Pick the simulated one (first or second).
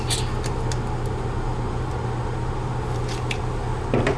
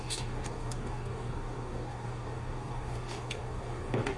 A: second